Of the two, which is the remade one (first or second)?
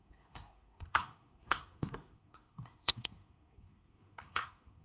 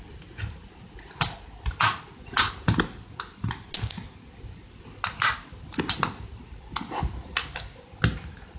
first